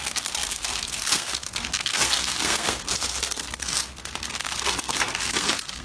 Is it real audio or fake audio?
fake